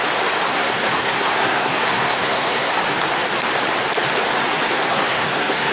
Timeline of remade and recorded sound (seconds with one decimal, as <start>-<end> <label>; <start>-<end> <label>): 0.0-0.5 recorded; 0.5-2.7 remade; 2.7-4.7 recorded; 4.7-5.7 remade

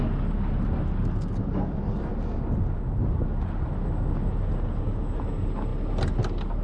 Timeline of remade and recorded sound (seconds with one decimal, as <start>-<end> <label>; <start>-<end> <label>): 0.0-6.6 recorded

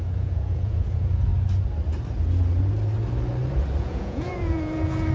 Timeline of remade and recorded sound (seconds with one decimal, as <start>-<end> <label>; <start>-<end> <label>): 0.0-1.3 remade; 1.3-3.8 recorded; 3.8-5.1 remade

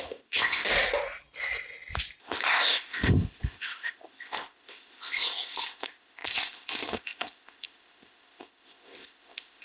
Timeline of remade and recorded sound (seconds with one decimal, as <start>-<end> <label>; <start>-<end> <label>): 0.0-0.7 remade; 0.7-2.2 recorded; 2.2-9.6 remade

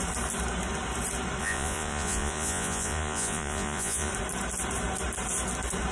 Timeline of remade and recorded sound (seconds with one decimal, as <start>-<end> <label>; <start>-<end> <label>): 0.0-1.4 recorded; 1.4-4.1 remade; 4.1-5.9 recorded

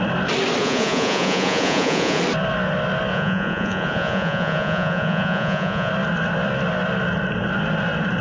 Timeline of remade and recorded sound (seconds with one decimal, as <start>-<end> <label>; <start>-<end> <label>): 0.0-0.6 recorded; 0.6-2.2 remade; 2.2-3.1 recorded; 3.1-5.9 remade; 5.9-8.2 recorded